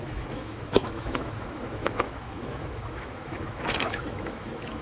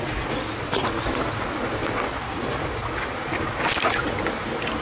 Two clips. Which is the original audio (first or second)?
second